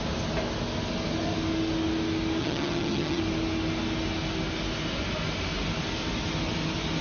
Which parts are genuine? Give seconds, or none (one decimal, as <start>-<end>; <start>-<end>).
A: 0.0-2.4; 3.2-7.0